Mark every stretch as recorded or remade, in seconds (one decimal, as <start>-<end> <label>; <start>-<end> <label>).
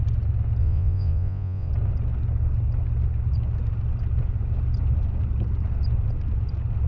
0.0-0.6 recorded; 0.6-1.7 remade; 1.7-6.9 recorded